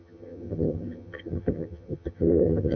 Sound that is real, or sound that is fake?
fake